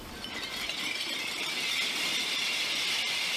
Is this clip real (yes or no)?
yes